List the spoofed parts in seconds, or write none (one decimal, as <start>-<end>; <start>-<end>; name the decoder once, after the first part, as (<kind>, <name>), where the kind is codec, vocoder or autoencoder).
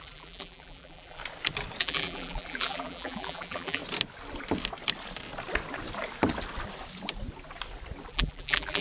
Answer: 0.0-1.2 (vocoder, BigVGAN v2); 1.8-3.8; 8.1-8.8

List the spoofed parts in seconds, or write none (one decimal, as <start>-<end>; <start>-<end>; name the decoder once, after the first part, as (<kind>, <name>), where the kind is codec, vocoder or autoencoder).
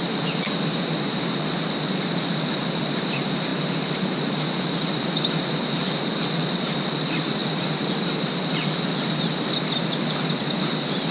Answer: 7.4-8.7 (vocoder, BigVGAN v2)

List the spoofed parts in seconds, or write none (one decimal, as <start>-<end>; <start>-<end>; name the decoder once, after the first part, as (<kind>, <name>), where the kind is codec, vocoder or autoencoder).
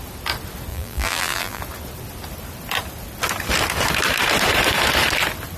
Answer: 0.7-1.6 (vocoder, BigVGAN v2)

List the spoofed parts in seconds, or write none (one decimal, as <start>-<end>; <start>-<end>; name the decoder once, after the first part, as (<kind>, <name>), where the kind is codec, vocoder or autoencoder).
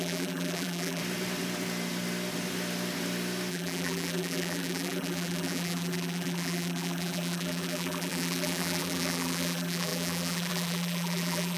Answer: 0.0-1.0 (vocoder, BigVGAN v2); 3.5-11.6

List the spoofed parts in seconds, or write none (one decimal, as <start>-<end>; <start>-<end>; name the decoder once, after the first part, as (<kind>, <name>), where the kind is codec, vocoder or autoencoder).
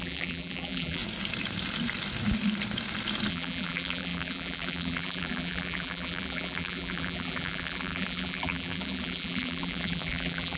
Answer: 0.0-1.0 (vocoder, BigVGAN v2); 3.3-10.6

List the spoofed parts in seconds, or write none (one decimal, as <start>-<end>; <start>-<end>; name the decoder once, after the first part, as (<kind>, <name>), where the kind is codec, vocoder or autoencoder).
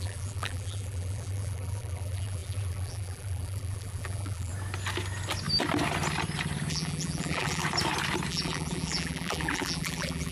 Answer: 0.0-4.5 (vocoder, BigVGAN v2); 6.7-7.6; 8.3-10.3